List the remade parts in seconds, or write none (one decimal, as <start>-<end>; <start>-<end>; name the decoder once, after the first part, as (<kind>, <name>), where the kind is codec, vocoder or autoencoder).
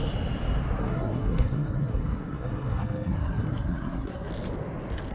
0.8-4.3 (codec, SNAC)